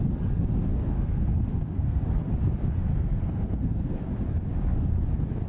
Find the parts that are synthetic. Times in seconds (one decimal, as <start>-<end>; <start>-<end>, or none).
0.7-2.0; 2.9-4.0